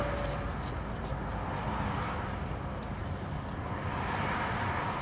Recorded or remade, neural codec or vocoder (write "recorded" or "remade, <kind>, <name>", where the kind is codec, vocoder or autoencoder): recorded